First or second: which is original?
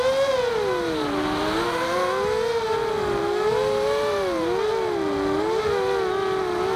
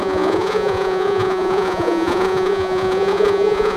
first